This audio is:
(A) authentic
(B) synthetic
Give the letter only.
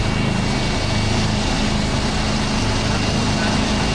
A